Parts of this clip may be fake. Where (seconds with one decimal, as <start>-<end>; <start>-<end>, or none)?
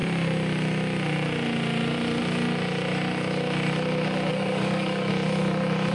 4.3-5.1